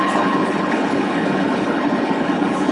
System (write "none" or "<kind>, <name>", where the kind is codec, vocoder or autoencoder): codec, HILCodec